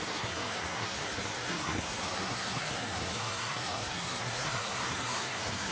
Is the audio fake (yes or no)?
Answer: yes